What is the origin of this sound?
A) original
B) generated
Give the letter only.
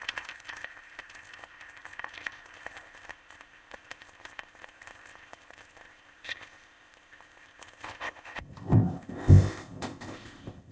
B